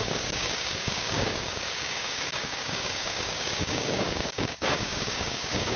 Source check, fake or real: fake